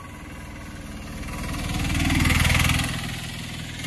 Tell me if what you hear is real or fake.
real